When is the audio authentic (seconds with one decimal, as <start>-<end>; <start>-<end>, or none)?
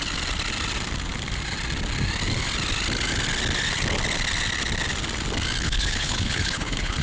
0.0-5.6